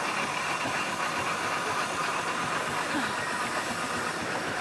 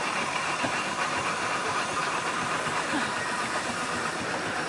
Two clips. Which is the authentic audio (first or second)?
first